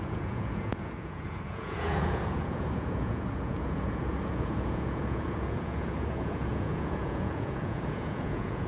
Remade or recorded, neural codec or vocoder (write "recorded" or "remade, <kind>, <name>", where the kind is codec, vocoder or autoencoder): remade, vocoder, Vocos